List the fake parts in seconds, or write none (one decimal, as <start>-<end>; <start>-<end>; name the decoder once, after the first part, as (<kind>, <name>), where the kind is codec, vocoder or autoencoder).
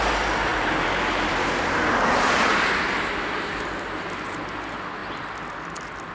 0.5-3.6 (vocoder, BigVGAN v2); 5.0-5.5